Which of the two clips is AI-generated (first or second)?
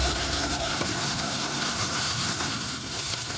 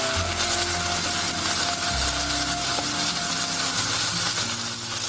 first